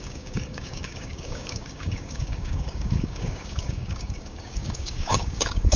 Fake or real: fake